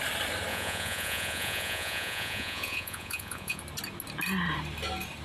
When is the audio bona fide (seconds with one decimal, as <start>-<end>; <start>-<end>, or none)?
0.0-0.5; 3.6-5.2